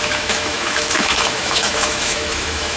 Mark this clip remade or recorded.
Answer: remade